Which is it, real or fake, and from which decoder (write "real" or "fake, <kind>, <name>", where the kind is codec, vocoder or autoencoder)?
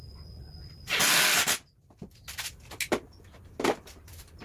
real